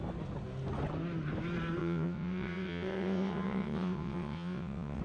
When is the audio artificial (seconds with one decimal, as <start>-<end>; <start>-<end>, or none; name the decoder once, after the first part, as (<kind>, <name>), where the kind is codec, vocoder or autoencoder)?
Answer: 1.8-5.0 (vocoder, WaveNeXt)